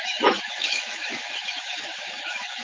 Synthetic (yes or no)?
yes